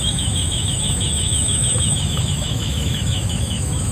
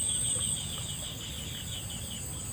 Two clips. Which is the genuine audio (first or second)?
second